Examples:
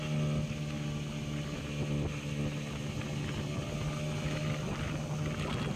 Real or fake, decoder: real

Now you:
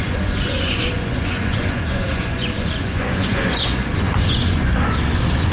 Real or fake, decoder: fake, vocoder, Vocos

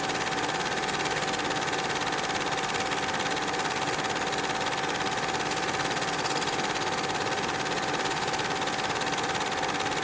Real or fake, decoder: real